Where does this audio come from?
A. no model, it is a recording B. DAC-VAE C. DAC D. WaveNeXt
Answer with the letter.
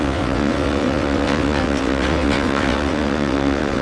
D